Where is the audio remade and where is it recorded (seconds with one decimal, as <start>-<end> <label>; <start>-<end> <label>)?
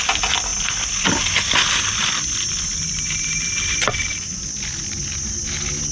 0.0-5.9 recorded